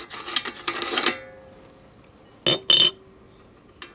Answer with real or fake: real